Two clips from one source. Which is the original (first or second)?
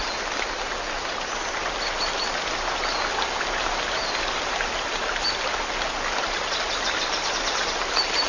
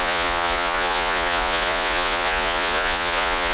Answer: first